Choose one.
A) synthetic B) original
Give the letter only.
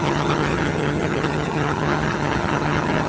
A